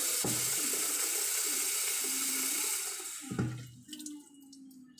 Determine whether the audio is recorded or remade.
recorded